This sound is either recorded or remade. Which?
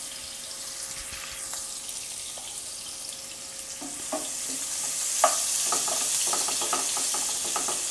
recorded